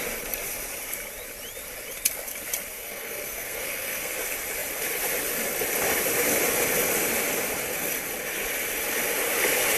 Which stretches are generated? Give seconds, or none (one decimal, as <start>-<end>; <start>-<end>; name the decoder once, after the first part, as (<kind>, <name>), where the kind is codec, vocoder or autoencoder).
2.7-4.1 (codec, SNAC)